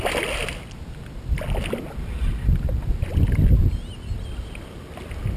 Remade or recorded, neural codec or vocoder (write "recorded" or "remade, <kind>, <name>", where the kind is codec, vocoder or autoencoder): recorded